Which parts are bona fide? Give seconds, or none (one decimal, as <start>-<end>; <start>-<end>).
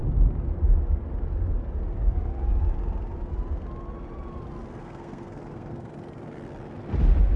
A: 0.0-4.8; 5.9-7.4